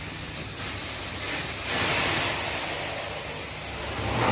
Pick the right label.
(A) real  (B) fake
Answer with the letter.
A